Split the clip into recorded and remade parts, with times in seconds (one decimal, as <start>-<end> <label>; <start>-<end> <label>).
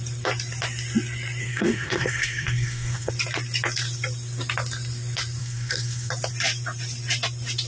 0.0-1.4 recorded; 1.4-3.1 remade; 3.1-5.4 recorded; 5.4-6.1 remade; 6.1-7.7 recorded